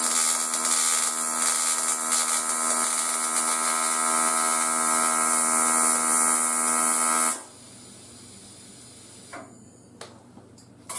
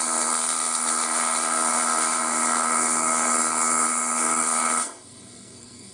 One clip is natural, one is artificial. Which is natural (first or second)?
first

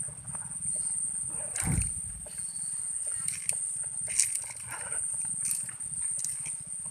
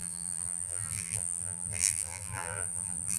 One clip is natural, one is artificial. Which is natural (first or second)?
first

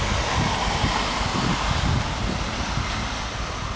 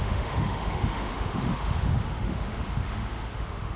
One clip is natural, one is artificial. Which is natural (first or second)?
first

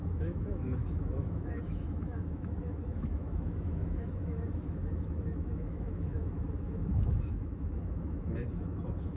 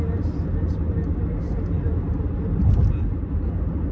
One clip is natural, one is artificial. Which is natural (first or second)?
second